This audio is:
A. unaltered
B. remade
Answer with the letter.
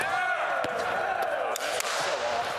A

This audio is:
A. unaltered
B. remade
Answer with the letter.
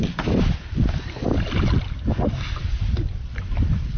A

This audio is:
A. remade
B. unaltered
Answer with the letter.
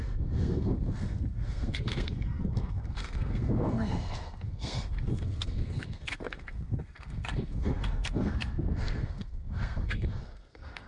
A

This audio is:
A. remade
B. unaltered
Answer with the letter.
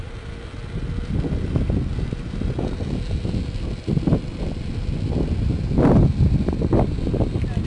B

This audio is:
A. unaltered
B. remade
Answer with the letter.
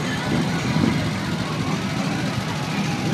A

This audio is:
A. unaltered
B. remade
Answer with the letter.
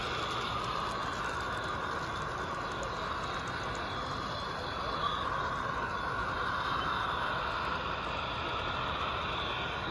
A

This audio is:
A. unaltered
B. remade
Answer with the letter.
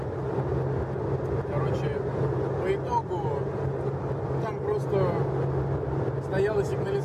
A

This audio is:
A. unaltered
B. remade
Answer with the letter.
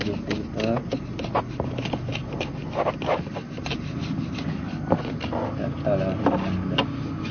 A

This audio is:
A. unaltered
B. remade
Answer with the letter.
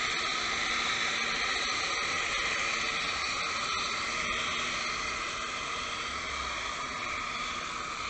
A